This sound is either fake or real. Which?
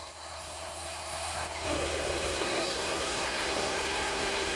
fake